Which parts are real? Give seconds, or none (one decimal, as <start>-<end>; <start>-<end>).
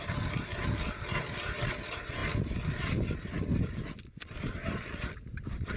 0.0-5.8